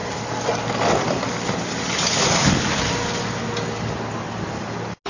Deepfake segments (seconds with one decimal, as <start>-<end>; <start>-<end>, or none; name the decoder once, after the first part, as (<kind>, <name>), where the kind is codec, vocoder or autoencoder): none